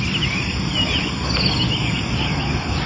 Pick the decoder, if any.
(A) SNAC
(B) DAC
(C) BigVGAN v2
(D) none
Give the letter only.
D